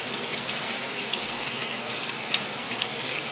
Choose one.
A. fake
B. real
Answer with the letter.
A